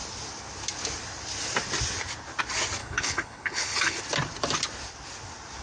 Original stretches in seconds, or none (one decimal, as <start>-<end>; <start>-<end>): 0.0-2.8; 4.0-5.6